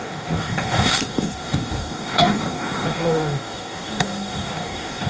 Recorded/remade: remade